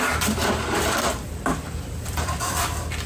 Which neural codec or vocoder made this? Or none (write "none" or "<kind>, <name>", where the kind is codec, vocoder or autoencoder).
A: vocoder, BigVGAN v2